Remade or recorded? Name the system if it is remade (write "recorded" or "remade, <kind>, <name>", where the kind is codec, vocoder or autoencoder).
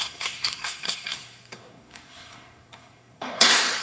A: remade, codec, SNAC